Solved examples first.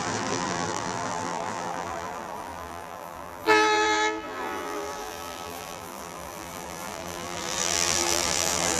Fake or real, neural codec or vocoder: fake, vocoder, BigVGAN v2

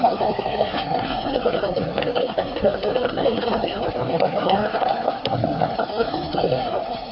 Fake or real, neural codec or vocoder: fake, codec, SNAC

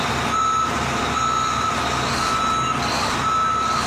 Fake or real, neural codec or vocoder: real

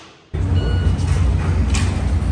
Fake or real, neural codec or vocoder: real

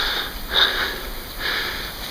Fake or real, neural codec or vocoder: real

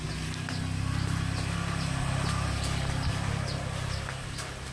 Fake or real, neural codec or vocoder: real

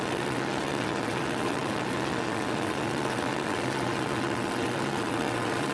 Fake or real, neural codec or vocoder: fake, vocoder, WaveNeXt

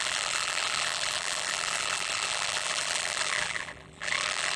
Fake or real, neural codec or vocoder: fake, vocoder, BigVGAN v2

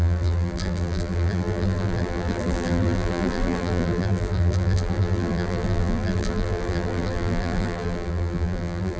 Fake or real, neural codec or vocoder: fake, vocoder, BigVGAN v2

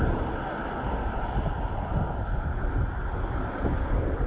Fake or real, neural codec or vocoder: real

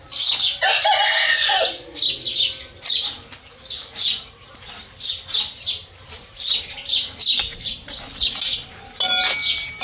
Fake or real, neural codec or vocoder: real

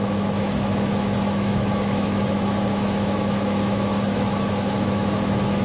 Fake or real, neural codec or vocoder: fake, autoencoder, DAC-VAE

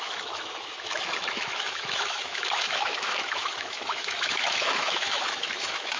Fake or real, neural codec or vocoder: fake, autoencoder, DAC-VAE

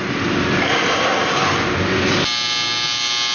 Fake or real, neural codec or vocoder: real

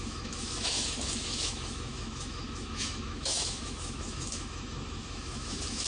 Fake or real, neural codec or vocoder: fake, autoencoder, DAC-VAE